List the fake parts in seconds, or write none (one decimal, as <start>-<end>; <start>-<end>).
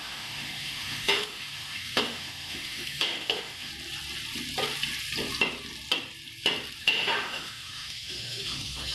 0.0-3.7; 6.8-8.9